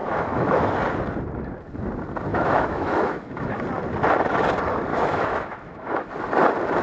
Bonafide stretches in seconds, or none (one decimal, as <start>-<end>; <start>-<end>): 0.7-2.3; 3.6-4.9; 6.1-6.8